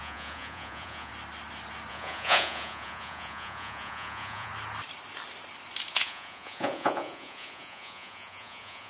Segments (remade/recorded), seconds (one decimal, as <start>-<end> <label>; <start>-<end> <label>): 0.0-1.1 remade; 1.1-1.9 recorded; 1.9-4.5 remade; 4.5-5.9 recorded; 5.9-8.9 remade